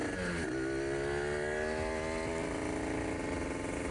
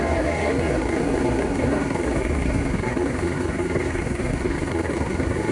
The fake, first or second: second